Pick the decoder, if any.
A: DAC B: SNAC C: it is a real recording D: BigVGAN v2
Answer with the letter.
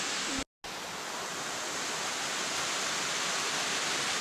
C